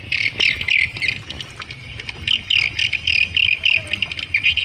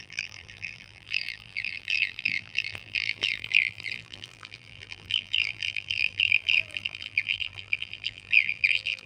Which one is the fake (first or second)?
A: second